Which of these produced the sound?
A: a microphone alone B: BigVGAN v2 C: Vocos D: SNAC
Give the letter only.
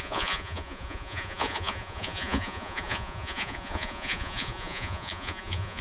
C